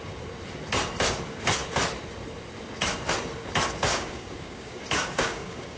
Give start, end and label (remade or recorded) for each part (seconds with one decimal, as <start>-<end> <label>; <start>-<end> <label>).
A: 0.0-3.9 recorded; 3.9-5.8 remade